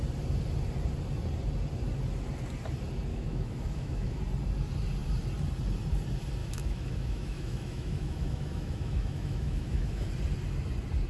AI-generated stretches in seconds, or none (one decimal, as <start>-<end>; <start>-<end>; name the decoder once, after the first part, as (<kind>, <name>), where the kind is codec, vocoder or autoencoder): 3.1-4.2 (autoencoder, DAC-VAE); 6.4-10.1